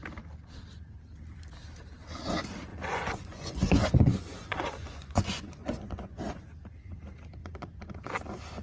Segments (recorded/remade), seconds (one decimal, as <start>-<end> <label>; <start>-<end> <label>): 0.0-2.7 recorded; 2.7-6.4 remade; 6.4-7.4 recorded; 7.4-8.1 remade; 8.1-8.6 recorded